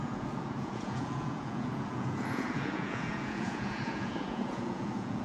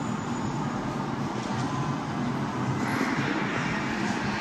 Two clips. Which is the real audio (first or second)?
second